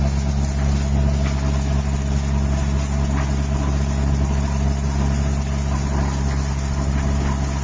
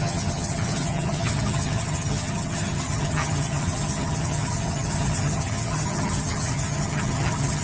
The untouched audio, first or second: first